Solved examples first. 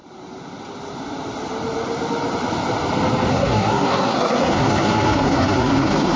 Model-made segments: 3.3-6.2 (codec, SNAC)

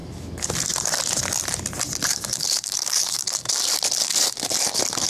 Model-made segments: 0.0-0.5 (codec, DAC); 2.1-3.5; 4.0-4.5

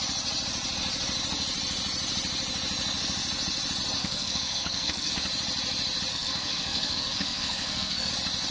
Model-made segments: 4.0-5.1 (codec, SNAC); 6.1-8.1

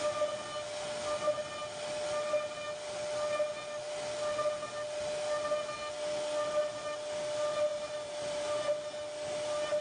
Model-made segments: 7.7-8.7 (vocoder, BigVGAN v2)

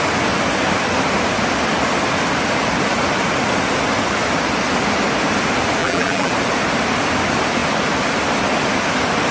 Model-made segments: 5.8-6.3 (vocoder, BigVGAN v2)

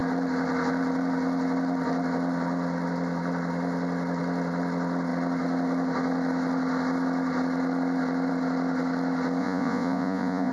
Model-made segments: 9.4-10.5 (vocoder, Vocos)

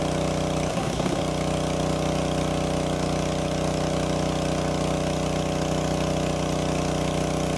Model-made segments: 0.7-1.2 (codec, SNAC)

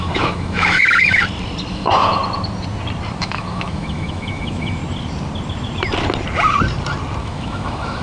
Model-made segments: 0.0-1.2 (autoencoder, DAC-VAE); 1.7-2.2; 3.2-4.8; 7.2-8.0